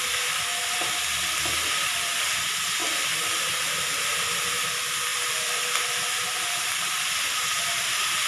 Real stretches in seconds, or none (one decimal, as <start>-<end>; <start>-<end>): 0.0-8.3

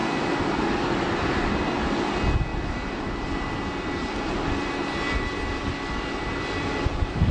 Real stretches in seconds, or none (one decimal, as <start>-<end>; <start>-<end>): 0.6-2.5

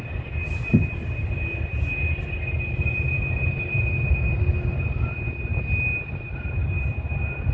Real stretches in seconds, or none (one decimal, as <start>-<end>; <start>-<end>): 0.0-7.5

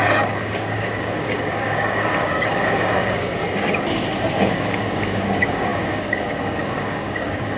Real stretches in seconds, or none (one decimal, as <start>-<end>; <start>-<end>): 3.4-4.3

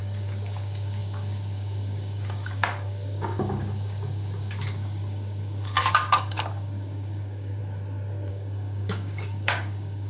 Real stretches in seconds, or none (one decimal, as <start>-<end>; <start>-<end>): 7.6-8.3